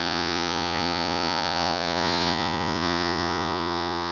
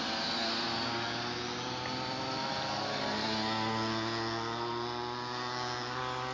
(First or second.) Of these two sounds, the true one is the second